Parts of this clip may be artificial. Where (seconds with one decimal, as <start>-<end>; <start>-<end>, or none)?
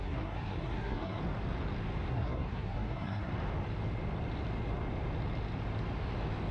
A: 0.0-1.2; 2.1-3.3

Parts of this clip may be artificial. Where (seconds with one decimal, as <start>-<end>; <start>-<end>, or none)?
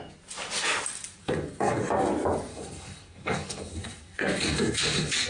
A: 1.2-1.8; 2.5-5.3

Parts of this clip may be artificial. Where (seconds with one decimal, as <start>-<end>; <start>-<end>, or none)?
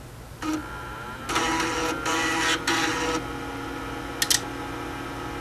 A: none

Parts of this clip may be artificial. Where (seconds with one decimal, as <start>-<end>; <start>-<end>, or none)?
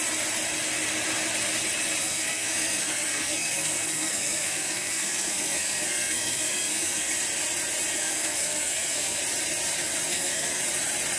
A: 2.0-7.1; 8.0-9.2; 10.1-10.6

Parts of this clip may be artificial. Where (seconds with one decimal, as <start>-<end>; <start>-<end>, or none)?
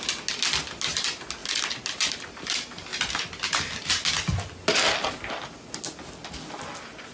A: none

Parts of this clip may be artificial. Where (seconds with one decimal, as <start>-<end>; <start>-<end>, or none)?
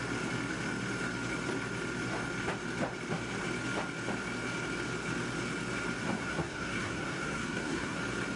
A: 6.0-8.0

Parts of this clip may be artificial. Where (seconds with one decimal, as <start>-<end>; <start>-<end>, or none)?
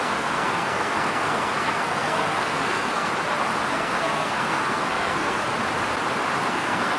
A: 0.0-3.1; 3.7-5.4; 6.5-7.0